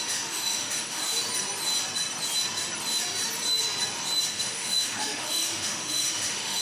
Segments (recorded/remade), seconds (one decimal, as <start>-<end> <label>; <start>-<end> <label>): 0.0-1.0 remade; 1.0-4.3 recorded; 4.3-6.6 remade